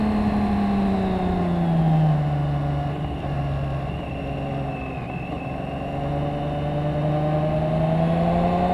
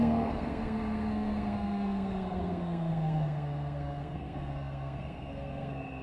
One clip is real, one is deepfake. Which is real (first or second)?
first